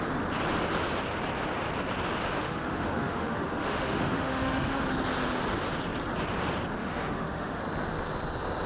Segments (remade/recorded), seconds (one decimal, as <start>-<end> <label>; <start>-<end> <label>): 0.0-2.4 recorded; 2.4-4.9 remade; 4.9-6.8 recorded; 6.8-7.6 remade; 7.6-8.7 recorded